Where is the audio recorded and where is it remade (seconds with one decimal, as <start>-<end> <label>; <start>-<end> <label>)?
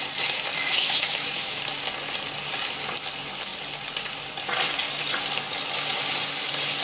0.0-0.7 recorded; 0.7-1.6 remade; 1.6-6.8 recorded